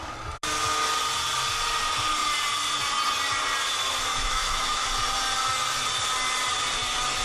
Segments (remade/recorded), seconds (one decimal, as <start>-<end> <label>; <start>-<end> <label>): 0.0-4.1 recorded; 4.1-4.9 remade; 4.9-7.2 recorded